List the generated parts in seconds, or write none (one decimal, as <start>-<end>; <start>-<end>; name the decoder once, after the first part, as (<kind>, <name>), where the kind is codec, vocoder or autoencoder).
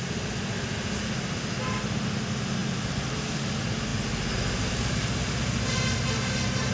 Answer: none